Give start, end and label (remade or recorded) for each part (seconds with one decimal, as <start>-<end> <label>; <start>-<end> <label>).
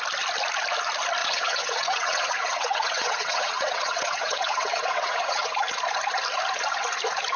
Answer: 0.0-1.2 recorded; 1.2-5.6 remade; 5.6-7.4 recorded